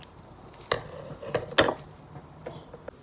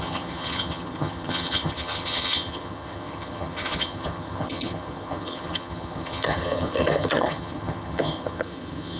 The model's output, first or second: second